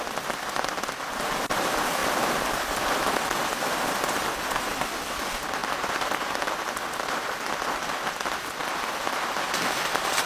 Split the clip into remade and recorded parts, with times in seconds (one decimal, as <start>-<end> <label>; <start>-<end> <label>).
0.0-5.6 recorded; 5.6-6.4 remade; 6.4-10.3 recorded